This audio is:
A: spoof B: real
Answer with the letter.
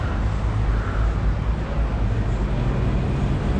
B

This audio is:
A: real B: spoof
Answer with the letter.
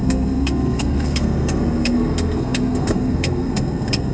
B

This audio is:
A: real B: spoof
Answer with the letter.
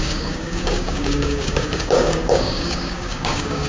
B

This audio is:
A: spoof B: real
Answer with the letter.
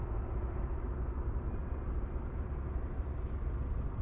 B